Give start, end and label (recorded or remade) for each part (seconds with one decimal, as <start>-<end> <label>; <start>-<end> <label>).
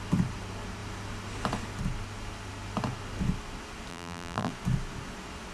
0.0-3.9 recorded; 3.9-4.5 remade; 4.5-5.5 recorded